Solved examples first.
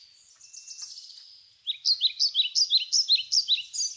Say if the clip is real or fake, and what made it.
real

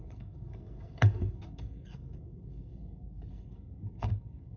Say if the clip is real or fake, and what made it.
fake, codec, SNAC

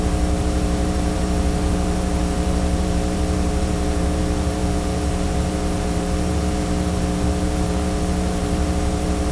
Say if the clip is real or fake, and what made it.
fake, vocoder, BigVGAN v2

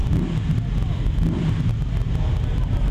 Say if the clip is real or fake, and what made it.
real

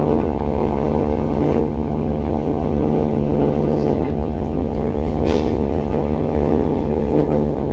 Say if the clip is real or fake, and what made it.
fake, vocoder, HiFi-GAN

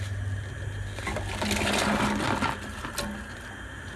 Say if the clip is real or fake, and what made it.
real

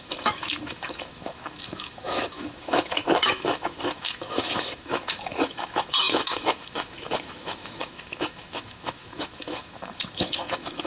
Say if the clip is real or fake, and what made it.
fake, autoencoder, DAC-VAE